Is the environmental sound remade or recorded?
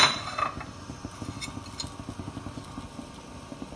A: recorded